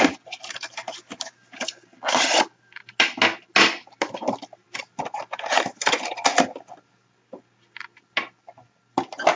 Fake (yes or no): no